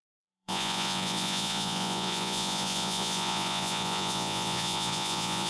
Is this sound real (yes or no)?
no